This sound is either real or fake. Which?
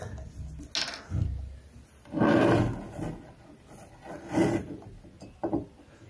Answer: real